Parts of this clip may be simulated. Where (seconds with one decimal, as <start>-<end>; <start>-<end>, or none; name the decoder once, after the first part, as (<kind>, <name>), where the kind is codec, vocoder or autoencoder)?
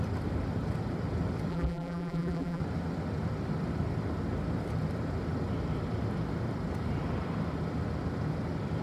1.5-2.6 (vocoder, BigVGAN v2)